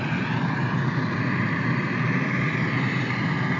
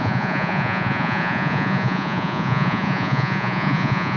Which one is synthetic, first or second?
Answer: second